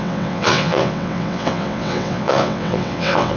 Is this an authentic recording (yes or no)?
no